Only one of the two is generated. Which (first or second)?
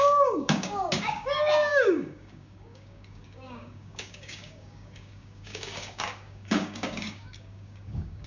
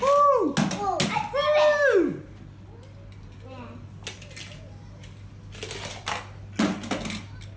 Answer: first